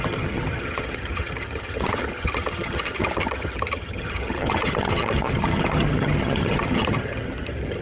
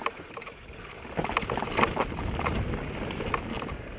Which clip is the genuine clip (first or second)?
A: second